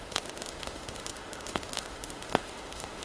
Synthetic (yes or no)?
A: yes